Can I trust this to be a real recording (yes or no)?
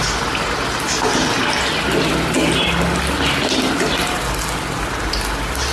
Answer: yes